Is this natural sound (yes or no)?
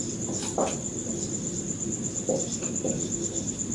yes